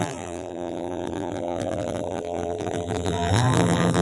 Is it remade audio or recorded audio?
remade